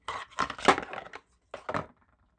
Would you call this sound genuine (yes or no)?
yes